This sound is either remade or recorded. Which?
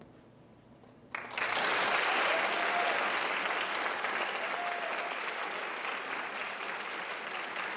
recorded